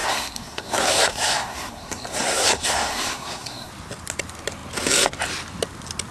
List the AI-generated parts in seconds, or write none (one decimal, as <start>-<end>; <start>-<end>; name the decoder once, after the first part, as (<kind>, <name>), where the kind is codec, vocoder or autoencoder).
0.0-3.7 (codec, SNAC)